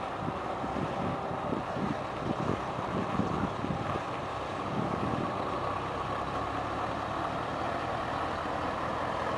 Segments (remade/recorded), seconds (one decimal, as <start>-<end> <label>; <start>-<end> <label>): 0.0-4.3 recorded; 4.3-5.1 remade; 5.1-9.4 recorded